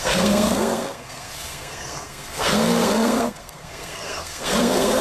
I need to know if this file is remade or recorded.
remade